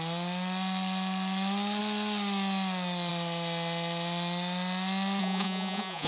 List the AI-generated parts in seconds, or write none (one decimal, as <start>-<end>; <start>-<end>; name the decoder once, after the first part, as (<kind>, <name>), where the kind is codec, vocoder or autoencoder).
5.2-6.1 (vocoder, Vocos)